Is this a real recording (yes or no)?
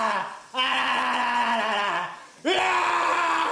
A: yes